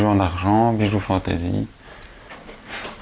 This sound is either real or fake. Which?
real